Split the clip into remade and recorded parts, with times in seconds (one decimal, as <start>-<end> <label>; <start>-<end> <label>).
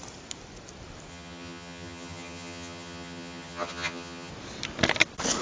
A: 0.0-1.1 recorded; 1.1-4.3 remade; 4.3-5.4 recorded